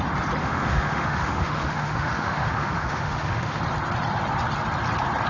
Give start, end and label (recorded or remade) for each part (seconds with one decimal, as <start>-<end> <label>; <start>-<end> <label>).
0.0-0.4 recorded; 0.4-3.6 remade; 3.6-5.3 recorded